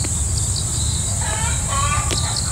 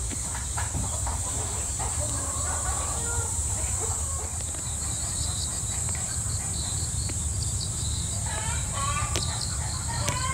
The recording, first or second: first